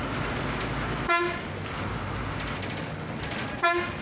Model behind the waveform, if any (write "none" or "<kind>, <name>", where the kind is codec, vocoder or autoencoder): none